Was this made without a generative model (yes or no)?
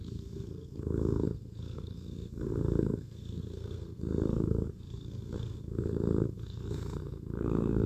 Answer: no